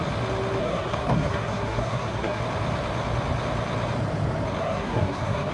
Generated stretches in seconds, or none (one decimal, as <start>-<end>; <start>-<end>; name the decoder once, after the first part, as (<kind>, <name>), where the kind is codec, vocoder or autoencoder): 0.6-2.4 (codec, SNAC); 4.6-5.5